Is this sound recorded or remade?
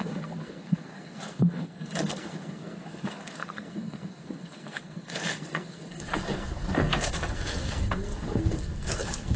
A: remade